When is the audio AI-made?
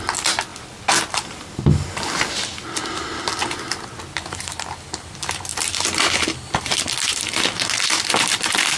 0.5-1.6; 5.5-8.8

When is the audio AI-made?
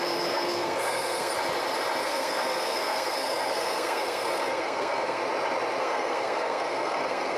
0.0-1.3; 2.0-5.2; 5.8-7.4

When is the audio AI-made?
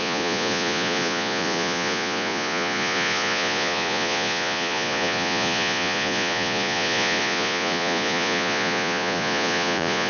0.0-10.1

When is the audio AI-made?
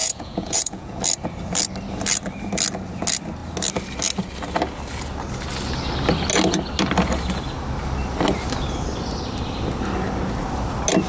0.0-1.0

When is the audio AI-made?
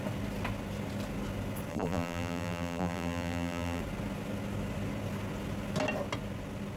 1.7-3.8